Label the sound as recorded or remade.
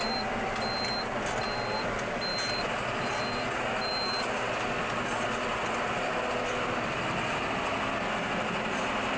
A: recorded